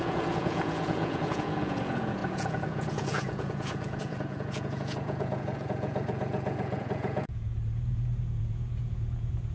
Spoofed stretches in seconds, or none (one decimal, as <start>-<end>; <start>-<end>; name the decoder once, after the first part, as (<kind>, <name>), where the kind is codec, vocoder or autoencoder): 0.0-9.5 (vocoder, Vocos)

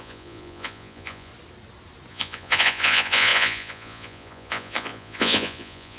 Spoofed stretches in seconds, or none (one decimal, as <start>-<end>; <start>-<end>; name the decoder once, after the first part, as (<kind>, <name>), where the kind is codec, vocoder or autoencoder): 0.0-1.3 (vocoder, Vocos); 2.1-6.0